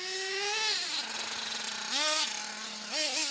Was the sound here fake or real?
real